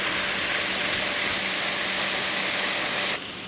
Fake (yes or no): no